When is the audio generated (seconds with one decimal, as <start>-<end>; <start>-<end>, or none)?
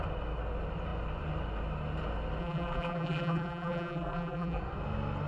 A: 2.4-4.6